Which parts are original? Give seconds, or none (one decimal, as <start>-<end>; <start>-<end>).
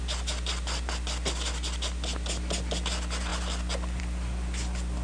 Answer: 0.0-5.0